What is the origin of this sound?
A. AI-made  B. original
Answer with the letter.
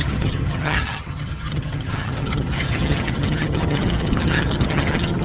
A